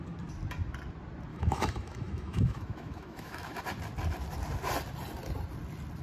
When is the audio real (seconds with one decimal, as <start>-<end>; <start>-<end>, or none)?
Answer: 0.0-1.3; 3.6-6.0